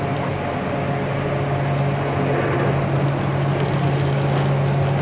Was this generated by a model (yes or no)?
no